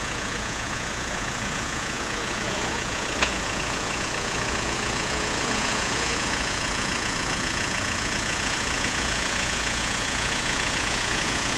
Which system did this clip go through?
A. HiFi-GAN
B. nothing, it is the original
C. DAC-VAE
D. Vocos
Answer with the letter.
D